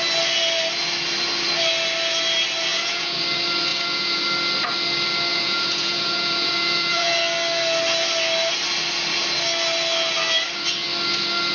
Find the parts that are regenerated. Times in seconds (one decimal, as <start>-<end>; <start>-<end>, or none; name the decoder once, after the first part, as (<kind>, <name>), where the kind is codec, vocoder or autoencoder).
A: 2.7-3.2 (vocoder, Vocos); 3.7-4.2; 5.3-7.2